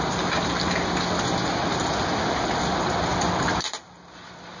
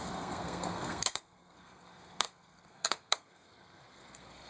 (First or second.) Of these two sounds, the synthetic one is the second